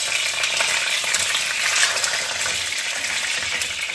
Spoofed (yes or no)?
no